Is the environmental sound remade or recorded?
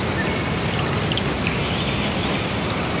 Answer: recorded